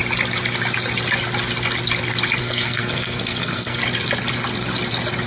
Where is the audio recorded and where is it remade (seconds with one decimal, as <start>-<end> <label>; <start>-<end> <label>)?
0.0-2.4 recorded; 2.4-3.8 remade; 3.8-5.3 recorded